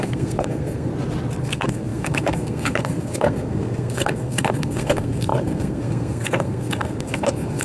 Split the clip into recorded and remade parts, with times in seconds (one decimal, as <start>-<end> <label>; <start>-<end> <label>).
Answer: 0.0-0.9 remade; 0.9-1.4 recorded; 1.4-7.6 remade